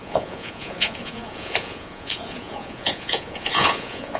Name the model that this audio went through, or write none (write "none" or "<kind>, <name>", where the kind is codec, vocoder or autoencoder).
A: vocoder, Vocos